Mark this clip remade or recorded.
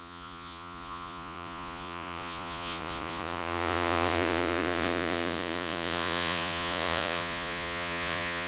remade